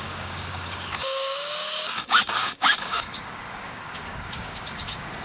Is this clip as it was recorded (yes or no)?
no